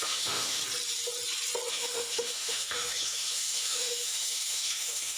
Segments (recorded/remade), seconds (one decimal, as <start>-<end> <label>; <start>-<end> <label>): 0.0-0.6 remade; 0.6-1.7 recorded; 1.7-5.2 remade